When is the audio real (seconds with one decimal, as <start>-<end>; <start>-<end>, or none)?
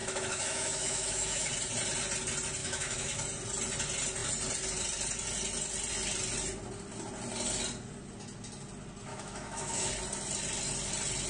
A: 1.5-2.6; 3.2-9.1; 9.9-11.3